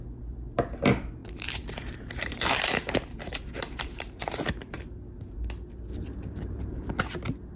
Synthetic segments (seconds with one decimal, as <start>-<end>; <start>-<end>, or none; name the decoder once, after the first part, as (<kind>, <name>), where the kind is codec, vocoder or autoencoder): 1.2-4.8 (vocoder, BigVGAN v2); 5.9-7.0